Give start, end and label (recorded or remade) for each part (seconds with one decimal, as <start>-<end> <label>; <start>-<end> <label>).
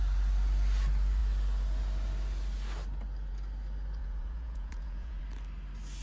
0.0-4.0 recorded; 4.0-5.2 remade; 5.2-6.0 recorded